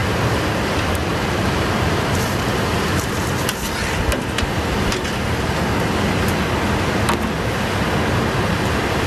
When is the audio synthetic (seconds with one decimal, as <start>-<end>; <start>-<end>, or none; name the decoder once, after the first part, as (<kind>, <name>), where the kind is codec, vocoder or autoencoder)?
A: 0.0-0.5 (vocoder, BigVGAN v2); 1.1-3.3

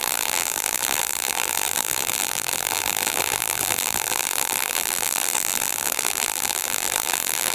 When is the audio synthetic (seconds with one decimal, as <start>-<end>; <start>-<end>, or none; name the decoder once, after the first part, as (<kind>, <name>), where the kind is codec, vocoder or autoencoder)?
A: 0.0-7.5 (vocoder, BigVGAN v2)

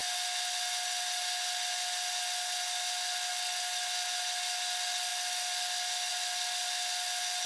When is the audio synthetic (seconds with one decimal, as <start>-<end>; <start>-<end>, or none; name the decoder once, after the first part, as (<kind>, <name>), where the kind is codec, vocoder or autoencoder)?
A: none

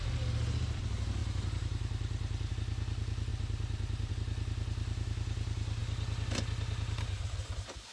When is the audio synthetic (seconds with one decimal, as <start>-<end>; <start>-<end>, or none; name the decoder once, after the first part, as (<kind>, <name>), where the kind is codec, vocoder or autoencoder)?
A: 1.2-2.5 (vocoder, BigVGAN v2); 3.3-4.1

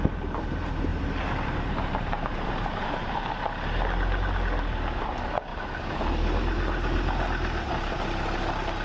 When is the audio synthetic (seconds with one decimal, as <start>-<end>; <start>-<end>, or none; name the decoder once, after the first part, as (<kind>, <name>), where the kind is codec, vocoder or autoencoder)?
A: 0.9-3.5 (vocoder, BigVGAN v2)

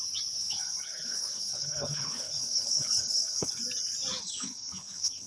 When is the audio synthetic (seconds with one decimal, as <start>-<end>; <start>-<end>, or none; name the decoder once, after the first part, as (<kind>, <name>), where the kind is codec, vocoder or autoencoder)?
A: 0.4-3.6 (codec, HILCodec); 4.2-5.3